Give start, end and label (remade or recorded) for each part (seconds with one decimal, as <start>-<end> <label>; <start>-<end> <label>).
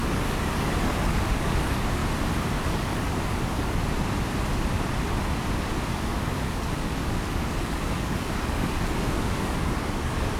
0.0-2.0 remade; 2.0-2.6 recorded; 2.6-3.8 remade; 3.8-6.0 recorded; 6.0-10.4 remade